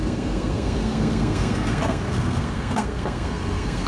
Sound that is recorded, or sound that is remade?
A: remade